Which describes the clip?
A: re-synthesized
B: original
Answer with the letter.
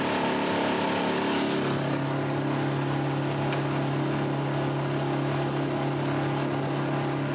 B